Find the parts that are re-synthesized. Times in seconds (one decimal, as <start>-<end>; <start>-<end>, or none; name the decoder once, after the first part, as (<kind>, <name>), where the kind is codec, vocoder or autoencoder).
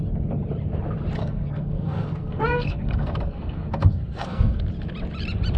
1.2-4.6 (codec, SNAC)